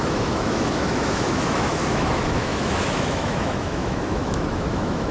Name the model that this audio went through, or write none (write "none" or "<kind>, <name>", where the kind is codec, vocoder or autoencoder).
autoencoder, DAC-VAE